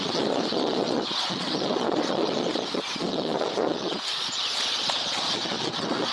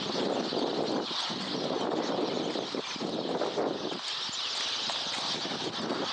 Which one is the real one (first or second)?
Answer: second